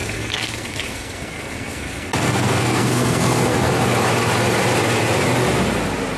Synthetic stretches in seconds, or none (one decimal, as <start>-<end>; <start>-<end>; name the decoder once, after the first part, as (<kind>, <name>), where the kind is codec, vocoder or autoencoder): 0.0-3.7 (codec, SNAC)